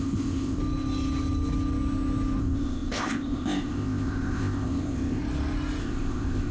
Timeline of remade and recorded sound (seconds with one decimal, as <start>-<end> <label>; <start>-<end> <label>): 0.0-0.6 remade; 0.6-2.4 recorded; 2.4-5.2 remade; 5.2-5.8 recorded; 5.8-6.5 remade